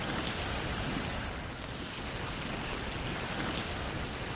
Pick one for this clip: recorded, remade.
recorded